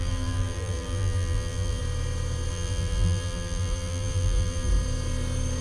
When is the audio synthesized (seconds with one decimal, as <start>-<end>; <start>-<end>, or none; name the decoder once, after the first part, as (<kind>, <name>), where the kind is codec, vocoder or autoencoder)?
0.0-1.8 (vocoder, BigVGAN v2); 2.5-4.7